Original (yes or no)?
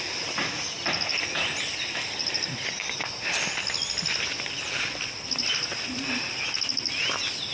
yes